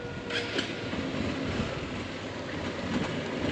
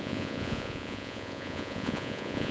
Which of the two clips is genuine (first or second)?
first